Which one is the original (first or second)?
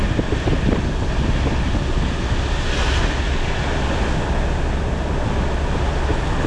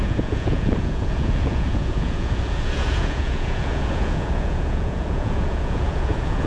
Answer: first